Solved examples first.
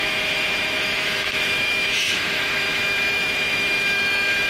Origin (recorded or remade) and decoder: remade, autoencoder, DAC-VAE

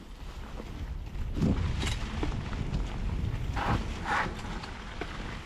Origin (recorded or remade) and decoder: recorded